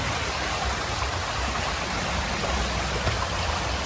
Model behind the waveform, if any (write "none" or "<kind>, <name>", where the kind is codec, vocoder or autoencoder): none